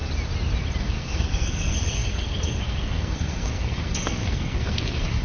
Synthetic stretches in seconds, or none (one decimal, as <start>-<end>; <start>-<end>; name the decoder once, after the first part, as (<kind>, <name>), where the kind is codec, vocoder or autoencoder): 0.8-5.2 (codec, SNAC)